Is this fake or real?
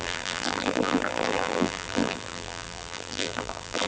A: fake